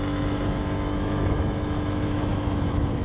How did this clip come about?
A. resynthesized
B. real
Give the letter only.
A